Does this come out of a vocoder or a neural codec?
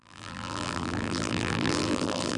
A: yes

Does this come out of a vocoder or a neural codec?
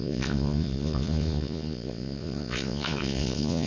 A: yes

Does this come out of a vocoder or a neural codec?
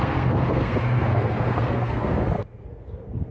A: yes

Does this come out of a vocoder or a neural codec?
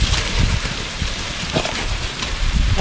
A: no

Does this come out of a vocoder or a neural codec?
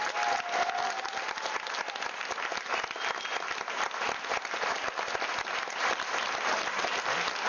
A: no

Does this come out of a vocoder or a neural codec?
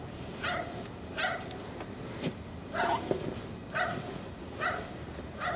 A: no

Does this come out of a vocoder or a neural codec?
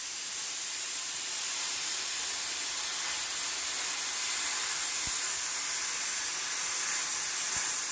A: no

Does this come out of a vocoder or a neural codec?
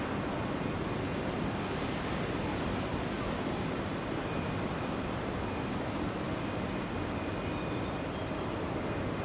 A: no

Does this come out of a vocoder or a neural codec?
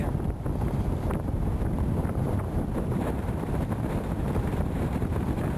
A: yes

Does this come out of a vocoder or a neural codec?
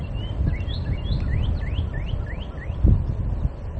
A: no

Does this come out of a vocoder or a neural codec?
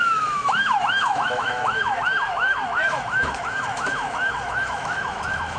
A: yes